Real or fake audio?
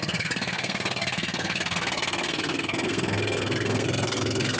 fake